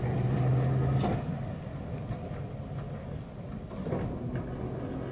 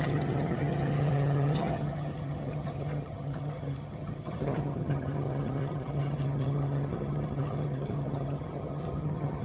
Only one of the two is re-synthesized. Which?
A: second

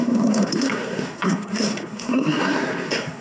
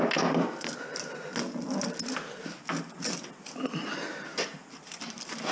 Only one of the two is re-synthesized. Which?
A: first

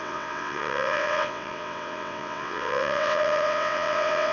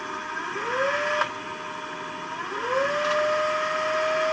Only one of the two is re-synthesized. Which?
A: first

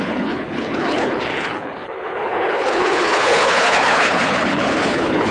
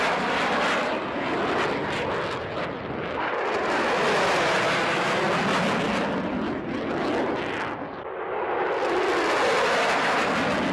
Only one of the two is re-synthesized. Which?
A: first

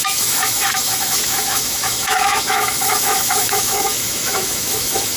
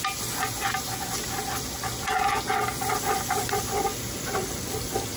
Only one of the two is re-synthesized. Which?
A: first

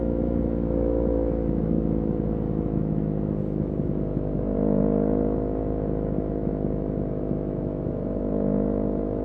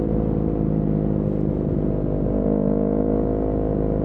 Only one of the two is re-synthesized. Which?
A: first